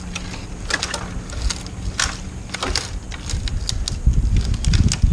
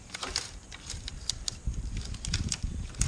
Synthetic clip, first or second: second